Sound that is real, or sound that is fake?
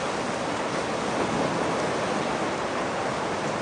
real